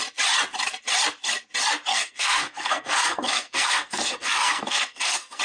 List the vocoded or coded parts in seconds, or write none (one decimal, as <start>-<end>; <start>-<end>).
1.9-5.4